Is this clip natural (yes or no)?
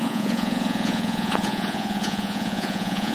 no